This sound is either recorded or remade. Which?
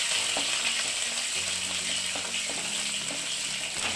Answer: recorded